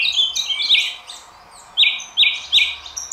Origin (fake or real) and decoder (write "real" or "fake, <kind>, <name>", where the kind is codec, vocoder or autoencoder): real